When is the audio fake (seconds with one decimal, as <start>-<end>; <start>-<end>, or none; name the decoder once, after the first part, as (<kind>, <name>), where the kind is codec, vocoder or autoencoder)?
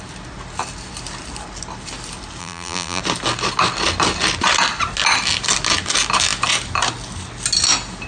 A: 2.4-3.0 (vocoder, BigVGAN v2)